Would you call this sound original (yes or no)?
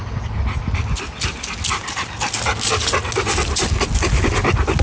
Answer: yes